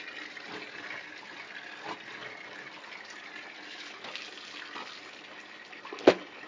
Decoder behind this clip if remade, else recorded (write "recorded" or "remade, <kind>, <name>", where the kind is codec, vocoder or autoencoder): recorded